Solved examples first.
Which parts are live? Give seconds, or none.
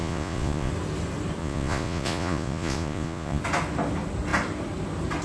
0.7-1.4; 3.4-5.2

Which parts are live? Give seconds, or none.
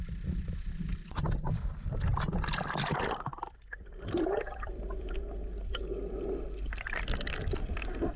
0.0-2.1; 5.2-8.2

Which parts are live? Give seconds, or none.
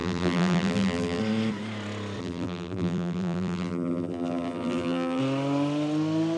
1.2-2.2; 5.2-6.4